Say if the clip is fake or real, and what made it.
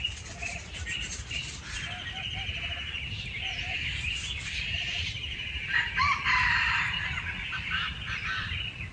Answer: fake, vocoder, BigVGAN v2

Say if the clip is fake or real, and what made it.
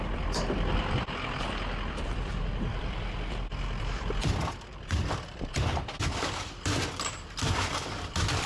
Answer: fake, vocoder, BigVGAN v2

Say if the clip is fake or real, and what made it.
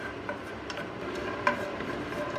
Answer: real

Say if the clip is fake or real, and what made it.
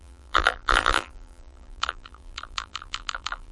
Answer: fake, vocoder, BigVGAN v2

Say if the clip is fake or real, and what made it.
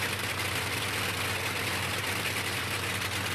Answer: real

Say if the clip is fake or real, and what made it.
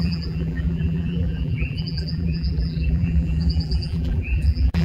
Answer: fake, vocoder, BigVGAN v2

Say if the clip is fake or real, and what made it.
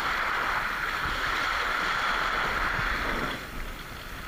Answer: real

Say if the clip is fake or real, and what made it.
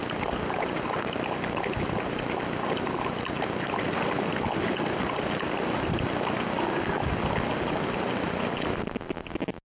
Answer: real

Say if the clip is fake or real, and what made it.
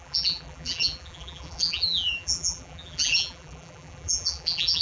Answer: fake, vocoder, BigVGAN v2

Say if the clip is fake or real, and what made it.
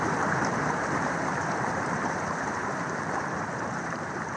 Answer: fake, vocoder, BigVGAN v2